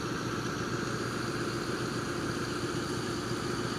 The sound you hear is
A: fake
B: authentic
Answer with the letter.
B